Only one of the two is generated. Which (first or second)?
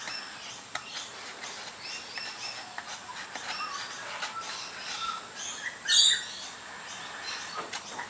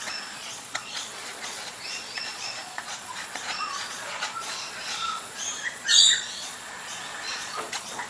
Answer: second